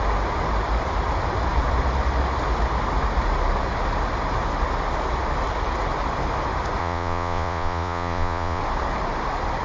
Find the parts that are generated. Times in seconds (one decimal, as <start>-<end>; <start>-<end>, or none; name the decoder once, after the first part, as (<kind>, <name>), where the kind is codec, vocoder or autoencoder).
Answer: 6.8-8.6 (vocoder, Vocos)